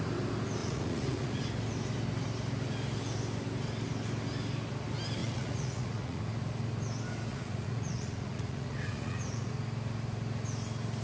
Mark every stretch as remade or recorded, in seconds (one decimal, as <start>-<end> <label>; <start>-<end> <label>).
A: 0.0-0.6 recorded; 0.6-1.4 remade; 1.4-5.2 recorded; 5.2-6.2 remade; 6.2-7.3 recorded; 7.3-9.5 remade; 9.5-11.0 recorded